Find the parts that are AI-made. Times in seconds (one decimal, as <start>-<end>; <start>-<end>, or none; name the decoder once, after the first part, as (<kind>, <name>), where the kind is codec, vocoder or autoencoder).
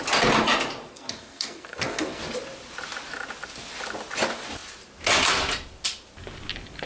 0.9-2.2 (codec, SNAC)